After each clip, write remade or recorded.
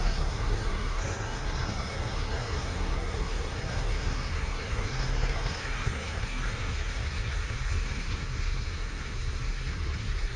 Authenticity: remade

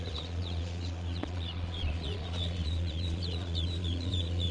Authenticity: remade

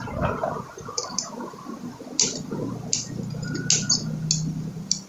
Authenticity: recorded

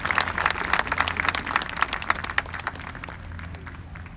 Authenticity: recorded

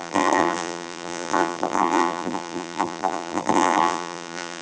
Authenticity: remade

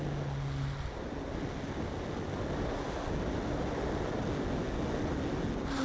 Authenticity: recorded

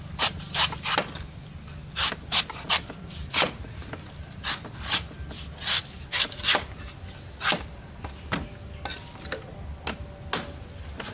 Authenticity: recorded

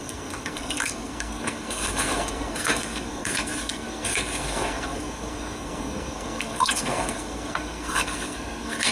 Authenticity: remade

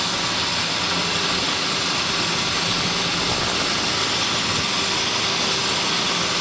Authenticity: recorded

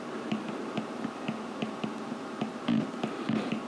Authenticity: recorded